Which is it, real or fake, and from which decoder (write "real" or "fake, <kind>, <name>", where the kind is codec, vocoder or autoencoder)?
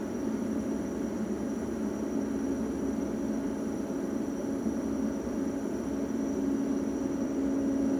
real